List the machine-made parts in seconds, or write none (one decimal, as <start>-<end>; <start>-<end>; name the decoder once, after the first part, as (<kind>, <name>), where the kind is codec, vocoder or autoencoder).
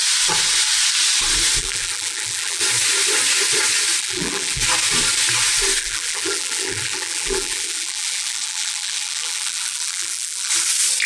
1.6-2.6 (vocoder, BigVGAN v2); 4.0-4.6; 5.8-10.5